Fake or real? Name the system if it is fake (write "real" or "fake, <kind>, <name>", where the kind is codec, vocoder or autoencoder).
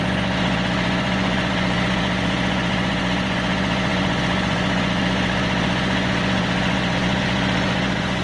fake, vocoder, Vocos